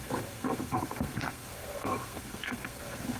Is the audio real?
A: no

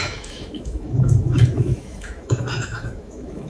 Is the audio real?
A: no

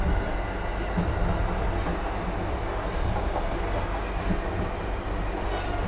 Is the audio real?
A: yes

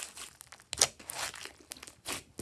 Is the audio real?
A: yes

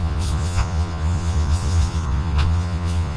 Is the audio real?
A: no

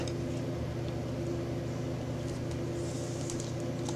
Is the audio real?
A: yes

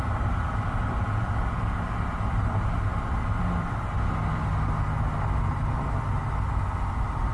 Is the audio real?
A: yes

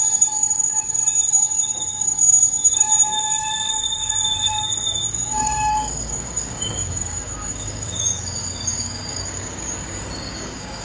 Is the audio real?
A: no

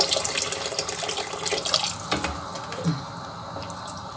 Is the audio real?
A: yes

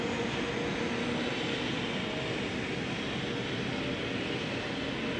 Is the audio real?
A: yes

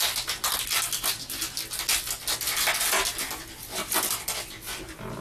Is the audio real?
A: yes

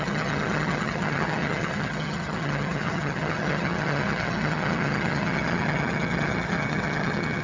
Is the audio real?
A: no